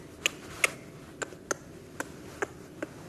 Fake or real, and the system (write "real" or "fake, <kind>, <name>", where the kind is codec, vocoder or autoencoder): real